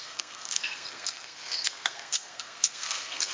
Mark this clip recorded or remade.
remade